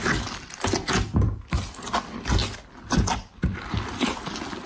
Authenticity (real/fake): real